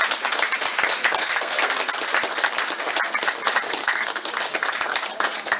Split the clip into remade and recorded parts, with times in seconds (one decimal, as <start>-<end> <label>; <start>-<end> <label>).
0.0-1.2 recorded; 1.2-1.7 remade; 1.7-3.8 recorded; 3.8-4.3 remade; 4.3-5.6 recorded